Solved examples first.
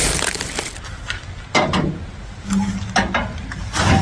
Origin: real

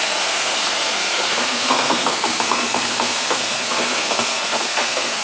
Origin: fake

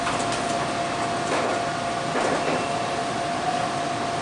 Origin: real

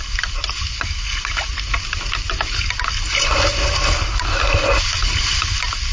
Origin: real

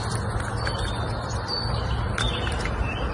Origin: real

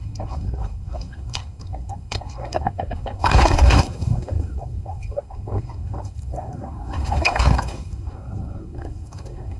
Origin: fake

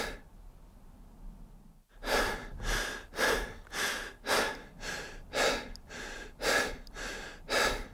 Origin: real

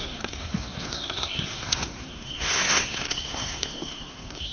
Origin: fake